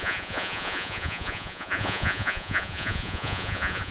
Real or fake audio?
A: fake